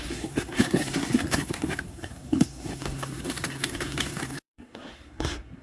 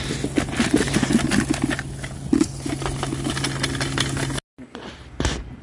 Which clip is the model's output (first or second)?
first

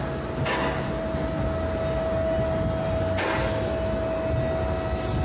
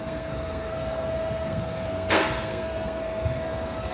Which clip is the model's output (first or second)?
second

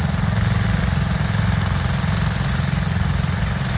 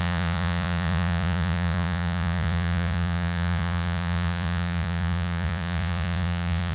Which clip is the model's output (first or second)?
second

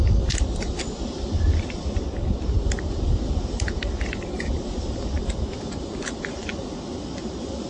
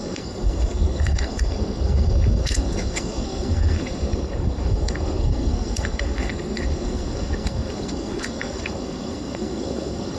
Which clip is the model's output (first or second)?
second